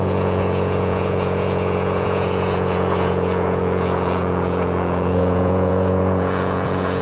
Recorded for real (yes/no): no